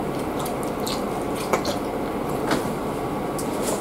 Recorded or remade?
recorded